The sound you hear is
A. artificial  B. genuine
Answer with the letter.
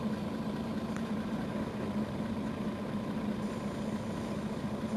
B